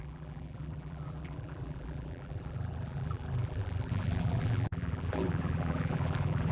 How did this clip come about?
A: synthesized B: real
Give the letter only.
A